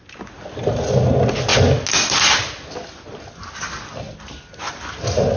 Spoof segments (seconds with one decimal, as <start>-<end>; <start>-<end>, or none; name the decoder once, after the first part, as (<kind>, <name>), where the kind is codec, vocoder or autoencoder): none